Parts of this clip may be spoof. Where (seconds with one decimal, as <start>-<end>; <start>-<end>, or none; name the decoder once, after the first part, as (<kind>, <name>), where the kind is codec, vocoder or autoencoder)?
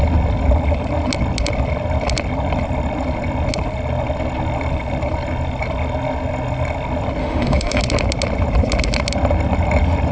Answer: 7.2-7.8 (autoencoder, DAC-VAE)